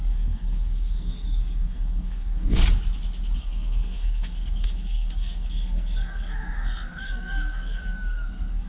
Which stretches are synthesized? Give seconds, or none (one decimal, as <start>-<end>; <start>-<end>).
0.0-2.6; 3.4-8.7